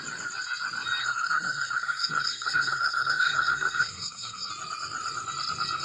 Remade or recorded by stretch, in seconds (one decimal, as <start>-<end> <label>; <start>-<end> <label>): 0.0-1.0 recorded; 1.0-4.5 remade; 4.5-5.8 recorded